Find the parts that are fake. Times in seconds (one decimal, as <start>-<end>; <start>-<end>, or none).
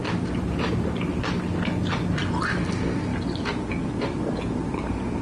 none